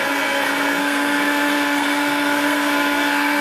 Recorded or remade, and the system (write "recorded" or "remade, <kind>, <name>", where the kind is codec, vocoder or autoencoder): remade, codec, SNAC